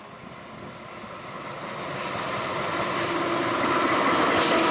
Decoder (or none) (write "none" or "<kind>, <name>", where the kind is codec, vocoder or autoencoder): none